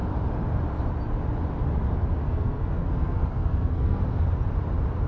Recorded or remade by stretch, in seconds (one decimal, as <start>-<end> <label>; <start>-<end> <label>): 0.0-2.2 recorded; 2.2-4.0 remade; 4.0-5.1 recorded